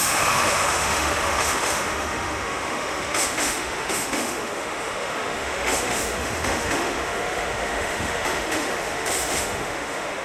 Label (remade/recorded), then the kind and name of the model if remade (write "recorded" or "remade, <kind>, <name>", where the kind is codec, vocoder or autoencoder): remade, autoencoder, DAC-VAE